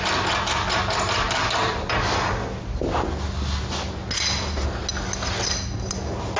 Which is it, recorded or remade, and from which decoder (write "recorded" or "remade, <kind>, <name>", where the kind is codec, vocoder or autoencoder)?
recorded